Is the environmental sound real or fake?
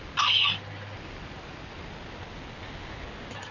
real